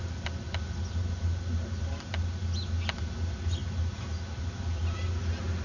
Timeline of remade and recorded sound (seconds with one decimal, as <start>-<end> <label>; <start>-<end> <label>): 0.0-5.6 recorded